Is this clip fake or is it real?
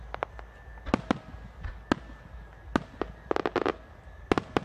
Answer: real